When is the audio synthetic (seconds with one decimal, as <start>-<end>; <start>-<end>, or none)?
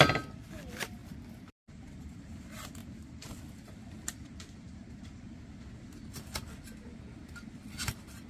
0.0-8.3